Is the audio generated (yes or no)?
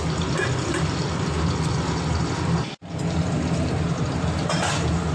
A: yes